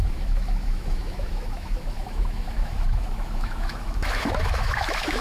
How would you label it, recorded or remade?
remade